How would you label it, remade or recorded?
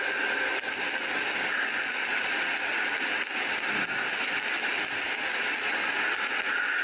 recorded